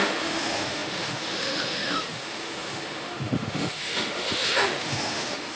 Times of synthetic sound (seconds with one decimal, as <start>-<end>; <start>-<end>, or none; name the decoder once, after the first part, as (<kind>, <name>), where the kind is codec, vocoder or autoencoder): 0.0-5.6 (autoencoder, DAC-VAE)